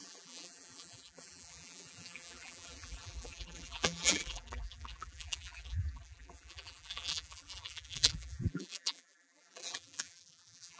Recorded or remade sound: remade